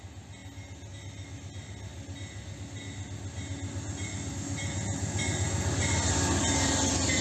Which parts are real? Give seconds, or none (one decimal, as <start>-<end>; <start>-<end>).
0.0-7.2